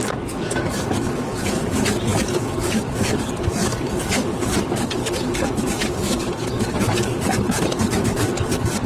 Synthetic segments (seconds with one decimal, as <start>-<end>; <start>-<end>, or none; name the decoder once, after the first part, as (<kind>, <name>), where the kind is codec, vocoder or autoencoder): 0.0-8.9 (codec, DAC)